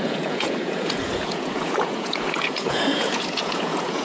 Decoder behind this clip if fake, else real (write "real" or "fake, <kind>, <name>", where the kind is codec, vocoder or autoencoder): fake, vocoder, Vocos